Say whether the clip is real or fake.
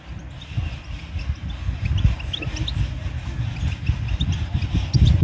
real